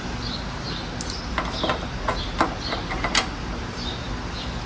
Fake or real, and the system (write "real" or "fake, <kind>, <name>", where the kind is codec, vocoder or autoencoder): real